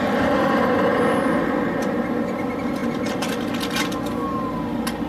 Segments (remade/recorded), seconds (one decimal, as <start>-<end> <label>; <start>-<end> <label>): 0.0-5.1 recorded